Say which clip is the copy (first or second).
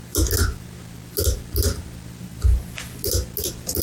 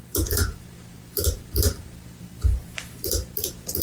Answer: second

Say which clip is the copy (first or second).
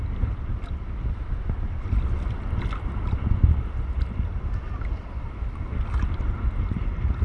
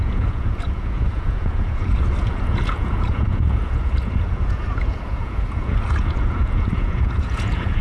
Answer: second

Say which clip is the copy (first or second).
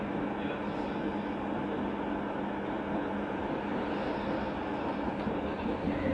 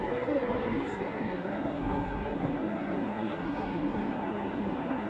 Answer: second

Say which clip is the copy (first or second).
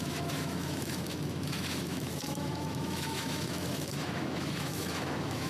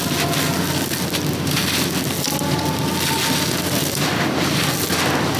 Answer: first